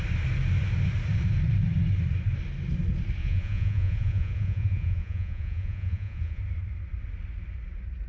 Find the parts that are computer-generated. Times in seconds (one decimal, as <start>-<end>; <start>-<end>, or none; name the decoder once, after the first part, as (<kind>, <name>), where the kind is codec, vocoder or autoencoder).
3.2-6.4 (vocoder, Vocos)